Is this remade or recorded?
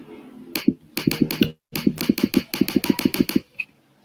recorded